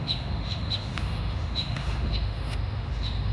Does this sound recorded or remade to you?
remade